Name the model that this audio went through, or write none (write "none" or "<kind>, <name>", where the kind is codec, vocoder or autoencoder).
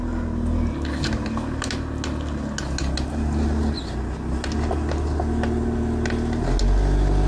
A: none